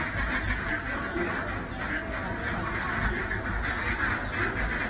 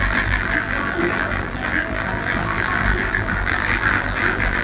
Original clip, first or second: first